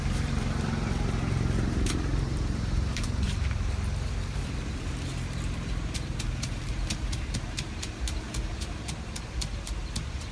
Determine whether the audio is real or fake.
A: fake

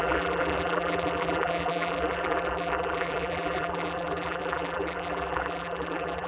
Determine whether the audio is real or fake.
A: fake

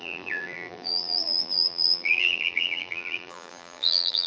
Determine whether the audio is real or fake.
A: fake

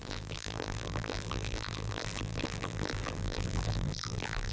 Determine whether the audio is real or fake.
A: fake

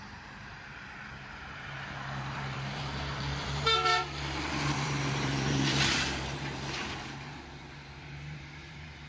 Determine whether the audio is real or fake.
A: fake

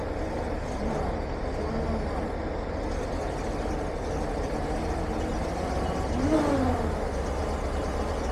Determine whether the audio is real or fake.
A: real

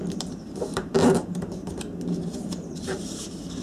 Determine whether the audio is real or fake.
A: fake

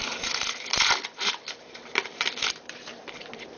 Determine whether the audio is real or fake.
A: fake